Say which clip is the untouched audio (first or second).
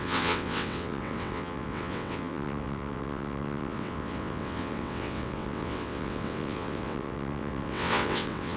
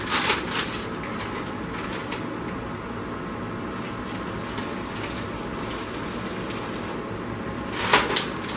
second